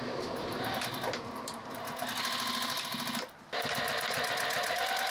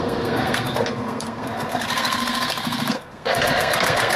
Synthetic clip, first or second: second